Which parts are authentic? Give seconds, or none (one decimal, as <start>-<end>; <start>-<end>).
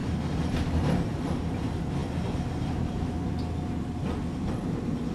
0.0-5.1